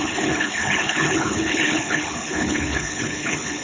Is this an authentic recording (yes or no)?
no